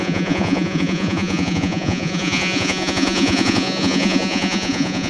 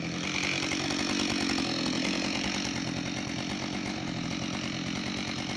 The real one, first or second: second